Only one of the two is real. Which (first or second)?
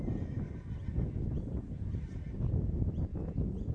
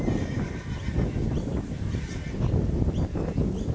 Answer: second